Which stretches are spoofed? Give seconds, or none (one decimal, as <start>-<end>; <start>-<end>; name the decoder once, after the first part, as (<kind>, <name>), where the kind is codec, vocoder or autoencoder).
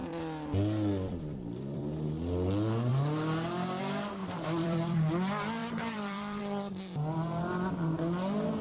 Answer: 0.0-1.8 (vocoder, BigVGAN v2); 4.2-5.1; 5.6-6.4